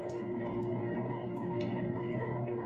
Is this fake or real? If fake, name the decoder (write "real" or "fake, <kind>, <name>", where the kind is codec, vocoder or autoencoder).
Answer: fake, codec, DAC